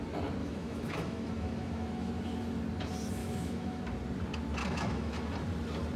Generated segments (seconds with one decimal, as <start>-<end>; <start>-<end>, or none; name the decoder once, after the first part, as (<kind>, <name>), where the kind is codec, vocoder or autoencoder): 0.4-2.1 (autoencoder, DAC-VAE); 3.2-3.8; 4.6-5.2